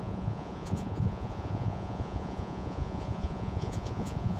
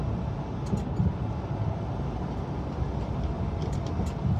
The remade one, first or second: first